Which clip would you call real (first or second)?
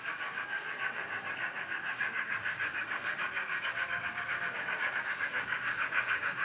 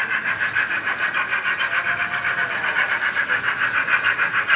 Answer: second